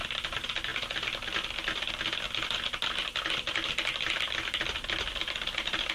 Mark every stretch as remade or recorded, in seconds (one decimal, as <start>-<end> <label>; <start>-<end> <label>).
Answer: 0.0-5.9 recorded